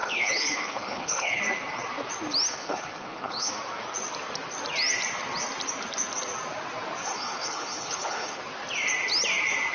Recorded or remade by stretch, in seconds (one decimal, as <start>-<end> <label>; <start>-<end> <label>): 0.0-1.4 remade; 1.4-2.6 recorded; 2.6-3.5 remade; 3.5-7.0 recorded; 7.0-8.4 remade; 8.4-9.7 recorded